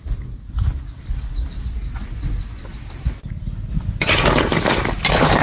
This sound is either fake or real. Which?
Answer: real